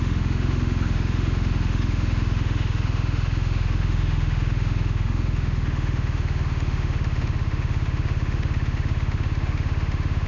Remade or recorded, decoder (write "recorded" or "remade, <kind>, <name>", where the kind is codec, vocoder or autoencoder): remade, autoencoder, DAC-VAE